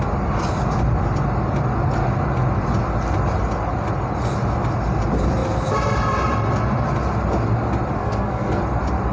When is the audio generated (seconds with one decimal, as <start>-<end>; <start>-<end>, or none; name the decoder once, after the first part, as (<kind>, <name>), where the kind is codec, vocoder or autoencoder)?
8.0-8.6 (codec, SNAC)